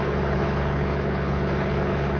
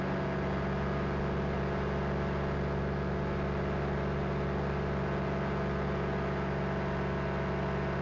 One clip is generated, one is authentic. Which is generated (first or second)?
first